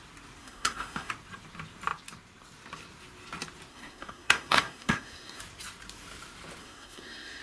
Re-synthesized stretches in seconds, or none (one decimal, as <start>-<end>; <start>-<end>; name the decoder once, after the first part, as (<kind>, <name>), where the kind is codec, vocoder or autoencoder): 0.4-1.1 (codec, SNAC); 3.7-5.4; 6.6-7.4